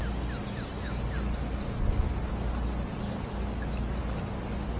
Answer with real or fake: real